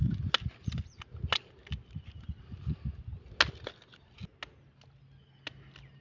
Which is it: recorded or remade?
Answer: recorded